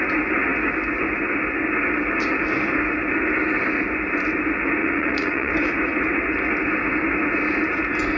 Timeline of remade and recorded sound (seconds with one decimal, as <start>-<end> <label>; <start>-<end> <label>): 0.0-4.8 recorded; 4.8-5.5 remade; 5.5-8.2 recorded